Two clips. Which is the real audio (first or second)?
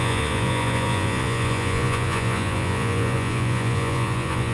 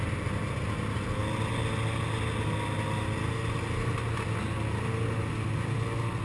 second